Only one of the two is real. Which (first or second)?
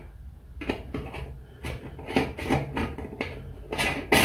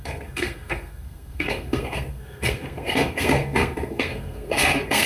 first